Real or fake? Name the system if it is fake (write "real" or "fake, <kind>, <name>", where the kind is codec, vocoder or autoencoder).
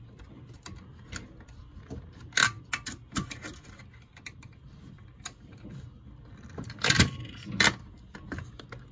real